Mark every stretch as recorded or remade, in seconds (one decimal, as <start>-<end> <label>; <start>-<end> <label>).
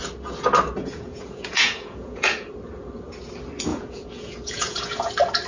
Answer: 0.0-0.8 recorded; 0.8-2.5 remade; 2.5-3.7 recorded; 3.7-5.1 remade; 5.1-5.5 recorded